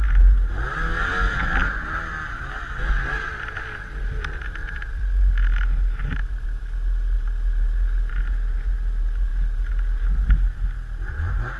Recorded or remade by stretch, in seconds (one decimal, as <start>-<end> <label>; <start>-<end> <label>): 0.0-4.6 recorded; 4.6-5.3 remade; 5.3-11.6 recorded

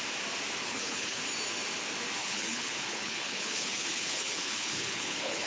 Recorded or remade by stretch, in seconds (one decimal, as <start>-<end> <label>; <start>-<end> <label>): 0.0-0.6 recorded; 0.6-1.2 remade; 1.2-2.2 recorded; 2.2-5.5 remade

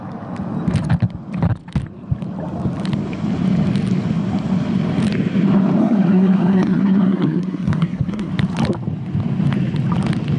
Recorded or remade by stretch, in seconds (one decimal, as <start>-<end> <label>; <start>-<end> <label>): 0.0-5.8 recorded; 5.8-8.3 remade; 8.3-10.4 recorded

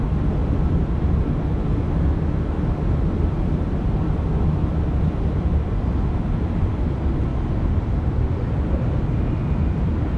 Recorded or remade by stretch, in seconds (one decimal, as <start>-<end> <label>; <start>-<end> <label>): 0.0-10.2 recorded

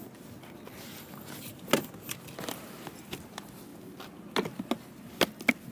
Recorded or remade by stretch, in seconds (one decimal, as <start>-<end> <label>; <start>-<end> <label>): 0.0-5.7 recorded

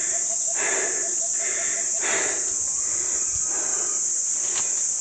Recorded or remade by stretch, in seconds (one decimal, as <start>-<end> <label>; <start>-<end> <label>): 0.0-5.0 recorded

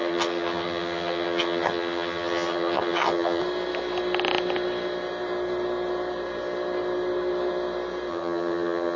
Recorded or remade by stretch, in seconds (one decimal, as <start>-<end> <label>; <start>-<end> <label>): 0.0-3.4 remade; 3.4-8.1 recorded; 8.1-9.0 remade